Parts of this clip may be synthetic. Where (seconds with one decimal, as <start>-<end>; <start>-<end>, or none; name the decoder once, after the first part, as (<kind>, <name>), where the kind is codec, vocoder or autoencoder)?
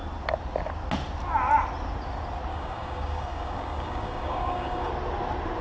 2.5-4.9 (codec, DAC)